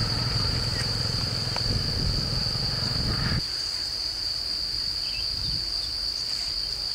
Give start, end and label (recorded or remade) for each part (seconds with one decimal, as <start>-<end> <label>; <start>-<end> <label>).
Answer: 0.0-0.5 remade; 0.5-3.3 recorded; 3.3-3.9 remade; 3.9-6.9 recorded